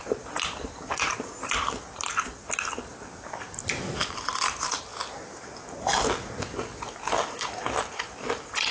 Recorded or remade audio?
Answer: recorded